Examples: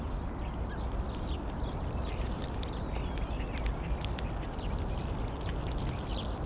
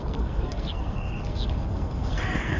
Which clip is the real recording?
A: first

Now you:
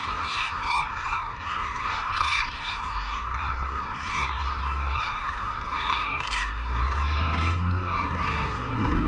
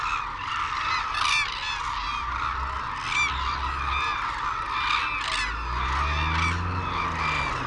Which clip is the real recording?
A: second